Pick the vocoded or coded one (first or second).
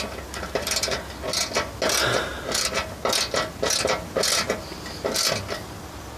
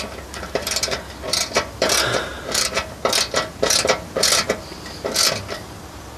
second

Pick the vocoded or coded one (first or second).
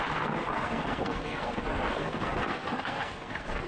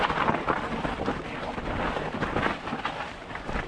first